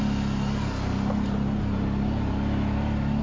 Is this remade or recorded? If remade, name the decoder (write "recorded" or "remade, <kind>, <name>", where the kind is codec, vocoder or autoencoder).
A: recorded